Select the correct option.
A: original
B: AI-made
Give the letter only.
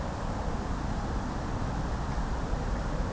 A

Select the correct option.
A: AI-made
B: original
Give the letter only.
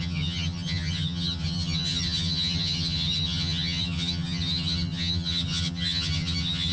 A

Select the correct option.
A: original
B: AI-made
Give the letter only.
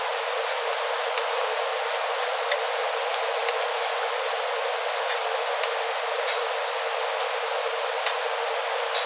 A